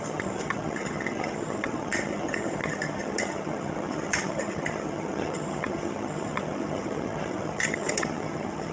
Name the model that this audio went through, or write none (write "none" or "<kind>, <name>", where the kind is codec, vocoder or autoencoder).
vocoder, HiFi-GAN